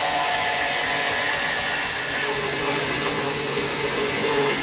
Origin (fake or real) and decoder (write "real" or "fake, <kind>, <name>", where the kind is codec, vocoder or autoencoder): fake, vocoder, Vocos